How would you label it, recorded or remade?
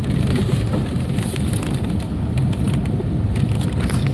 recorded